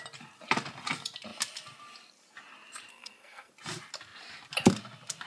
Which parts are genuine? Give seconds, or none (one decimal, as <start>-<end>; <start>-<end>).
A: 0.0-2.9; 3.5-5.3